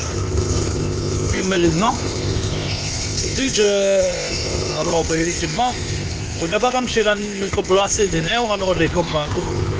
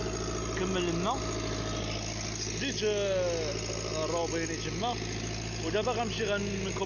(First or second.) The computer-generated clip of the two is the first